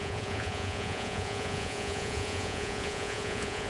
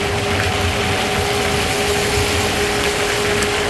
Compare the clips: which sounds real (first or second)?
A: second